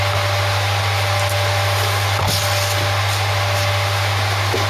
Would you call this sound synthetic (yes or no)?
no